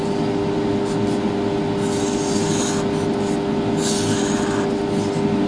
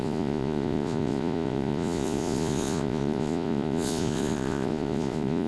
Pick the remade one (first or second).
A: second